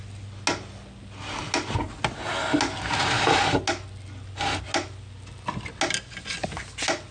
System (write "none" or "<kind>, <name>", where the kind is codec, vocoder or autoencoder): none